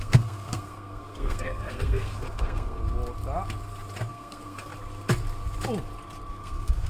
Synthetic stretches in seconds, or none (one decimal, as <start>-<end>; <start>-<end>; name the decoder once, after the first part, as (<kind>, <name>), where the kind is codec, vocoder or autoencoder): 0.0-2.8 (codec, SNAC); 4.1-4.7; 6.3-6.9

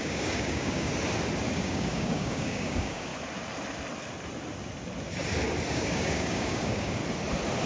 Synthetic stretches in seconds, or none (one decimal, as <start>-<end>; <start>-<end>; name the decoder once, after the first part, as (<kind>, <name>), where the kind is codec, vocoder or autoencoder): 0.0-0.9 (codec, DAC); 1.5-3.1; 5.7-7.0

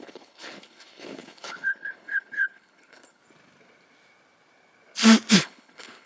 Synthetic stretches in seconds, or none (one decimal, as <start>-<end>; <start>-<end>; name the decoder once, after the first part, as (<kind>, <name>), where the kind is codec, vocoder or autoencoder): 0.0-3.2 (codec, HILCodec); 5.3-6.1